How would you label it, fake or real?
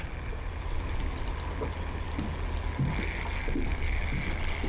real